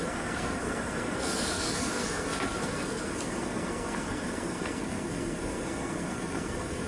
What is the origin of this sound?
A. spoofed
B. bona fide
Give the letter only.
A